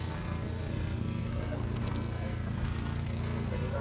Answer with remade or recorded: remade